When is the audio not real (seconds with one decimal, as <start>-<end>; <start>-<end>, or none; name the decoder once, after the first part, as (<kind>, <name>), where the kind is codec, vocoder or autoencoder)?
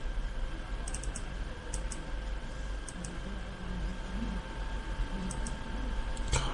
none